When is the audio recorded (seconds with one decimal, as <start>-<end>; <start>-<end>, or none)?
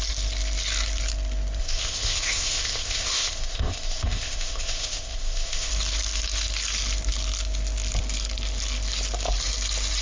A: 0.0-1.6; 5.7-10.0